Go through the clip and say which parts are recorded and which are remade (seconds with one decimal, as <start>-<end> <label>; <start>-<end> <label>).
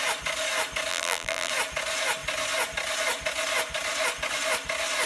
0.0-0.9 recorded; 0.9-1.5 remade; 1.5-5.1 recorded